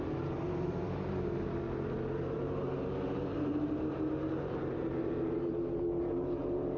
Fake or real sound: fake